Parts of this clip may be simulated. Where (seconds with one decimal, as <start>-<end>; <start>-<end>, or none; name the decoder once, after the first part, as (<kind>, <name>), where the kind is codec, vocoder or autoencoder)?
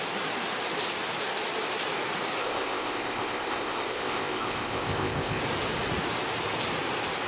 2.4-5.4 (codec, ZipCodec)